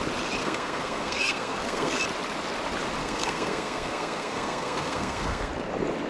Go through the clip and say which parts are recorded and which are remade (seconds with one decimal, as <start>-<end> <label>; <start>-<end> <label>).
0.0-0.4 recorded; 0.4-2.0 remade; 2.0-3.0 recorded; 3.0-5.5 remade; 5.5-6.1 recorded